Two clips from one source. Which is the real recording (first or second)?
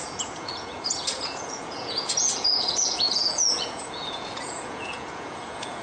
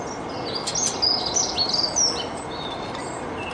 second